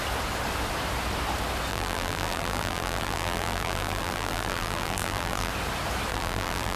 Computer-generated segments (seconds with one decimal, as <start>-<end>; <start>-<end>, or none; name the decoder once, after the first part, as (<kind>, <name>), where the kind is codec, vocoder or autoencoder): 1.7-5.5 (vocoder, BigVGAN v2); 6.1-6.8